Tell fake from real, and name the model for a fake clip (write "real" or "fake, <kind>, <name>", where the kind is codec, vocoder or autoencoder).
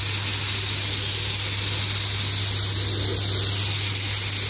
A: real